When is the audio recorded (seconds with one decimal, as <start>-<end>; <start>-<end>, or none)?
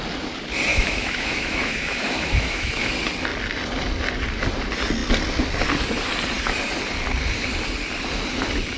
0.0-0.7; 2.9-8.8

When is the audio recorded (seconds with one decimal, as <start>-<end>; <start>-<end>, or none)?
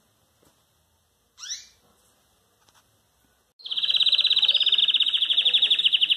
0.0-6.2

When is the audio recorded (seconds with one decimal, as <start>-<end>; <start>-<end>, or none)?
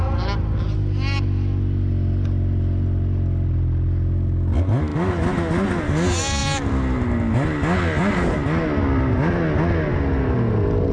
0.0-10.9